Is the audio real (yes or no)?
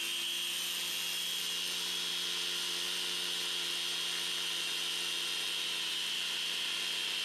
yes